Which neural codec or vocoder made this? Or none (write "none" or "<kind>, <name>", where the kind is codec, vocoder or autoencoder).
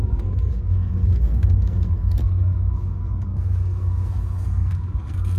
codec, SNAC